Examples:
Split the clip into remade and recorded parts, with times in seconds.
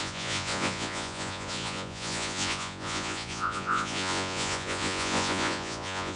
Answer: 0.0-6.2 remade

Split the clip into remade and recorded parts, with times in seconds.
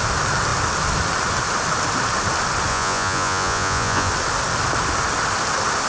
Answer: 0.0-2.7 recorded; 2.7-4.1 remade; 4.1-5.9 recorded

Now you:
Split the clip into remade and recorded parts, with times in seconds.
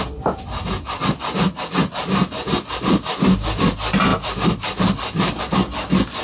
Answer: 0.0-6.2 recorded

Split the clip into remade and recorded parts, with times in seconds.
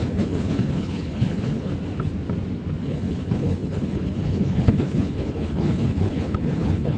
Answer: 0.0-1.7 remade; 1.7-2.8 recorded; 2.8-7.0 remade